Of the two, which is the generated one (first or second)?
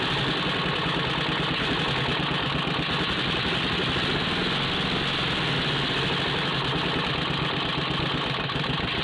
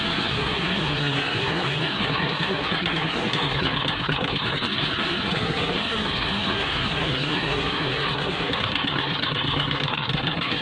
second